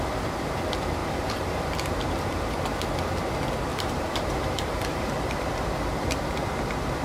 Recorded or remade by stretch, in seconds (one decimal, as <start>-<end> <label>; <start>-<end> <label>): 0.0-1.0 recorded; 1.0-1.7 remade; 1.7-3.7 recorded; 3.7-5.6 remade; 5.6-7.0 recorded